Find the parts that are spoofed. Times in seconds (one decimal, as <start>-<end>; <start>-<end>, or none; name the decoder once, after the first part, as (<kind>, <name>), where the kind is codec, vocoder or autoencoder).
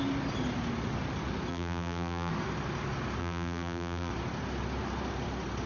1.5-2.3 (vocoder, BigVGAN v2); 3.2-4.1